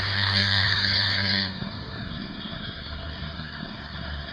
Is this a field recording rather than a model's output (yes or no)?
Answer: no